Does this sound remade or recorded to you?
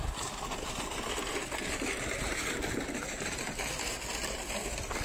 recorded